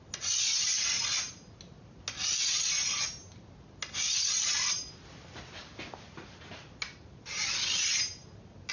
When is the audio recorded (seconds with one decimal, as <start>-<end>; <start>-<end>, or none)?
0.0-8.7